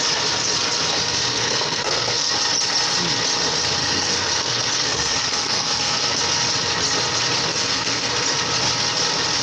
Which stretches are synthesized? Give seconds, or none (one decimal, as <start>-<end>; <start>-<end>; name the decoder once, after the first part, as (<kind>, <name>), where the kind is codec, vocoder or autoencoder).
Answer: 1.3-2.3 (codec, SNAC); 3.8-6.2; 7.5-8.1